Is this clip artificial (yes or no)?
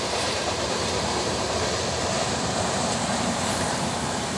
yes